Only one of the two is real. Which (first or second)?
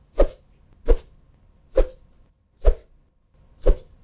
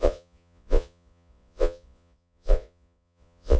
first